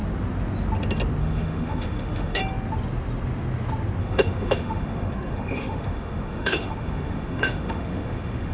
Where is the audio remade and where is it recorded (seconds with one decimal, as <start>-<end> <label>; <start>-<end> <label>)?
0.0-1.2 recorded; 1.2-2.4 remade; 2.4-4.0 recorded; 4.0-8.5 remade